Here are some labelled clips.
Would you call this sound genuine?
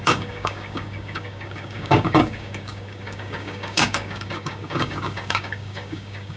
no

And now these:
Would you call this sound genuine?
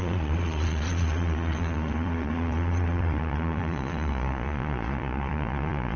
no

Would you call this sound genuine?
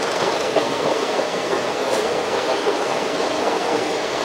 no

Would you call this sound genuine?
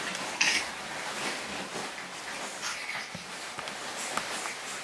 yes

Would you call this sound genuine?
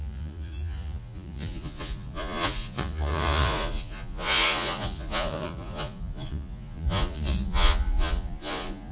no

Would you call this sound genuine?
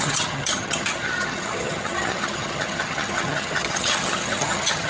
no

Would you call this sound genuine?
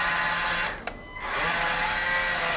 yes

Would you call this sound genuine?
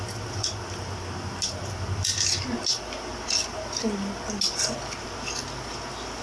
yes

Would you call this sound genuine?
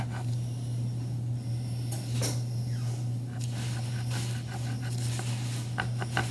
yes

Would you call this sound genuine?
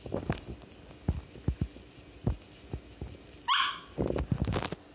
yes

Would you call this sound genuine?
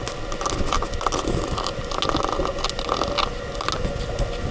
yes